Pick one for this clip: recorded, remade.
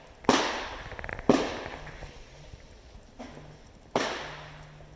recorded